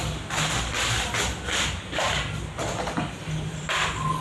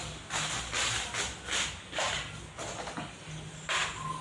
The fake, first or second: first